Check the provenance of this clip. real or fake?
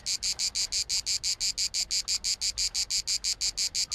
real